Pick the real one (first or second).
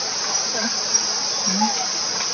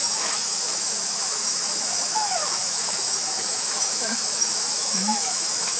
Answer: first